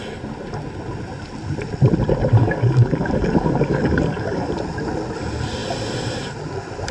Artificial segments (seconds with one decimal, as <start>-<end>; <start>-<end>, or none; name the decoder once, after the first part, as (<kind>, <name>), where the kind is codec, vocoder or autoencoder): 2.4-4.5 (codec, DAC)